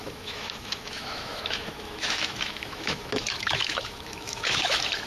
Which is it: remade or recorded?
remade